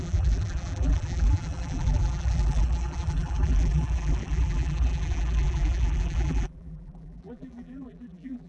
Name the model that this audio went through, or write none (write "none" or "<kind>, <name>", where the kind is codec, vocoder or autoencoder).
vocoder, BigVGAN v2